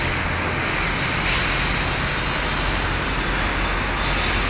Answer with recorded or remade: recorded